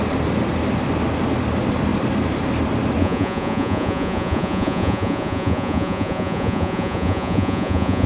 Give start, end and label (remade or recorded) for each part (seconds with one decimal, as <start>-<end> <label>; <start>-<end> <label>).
0.0-3.0 recorded; 3.0-8.1 remade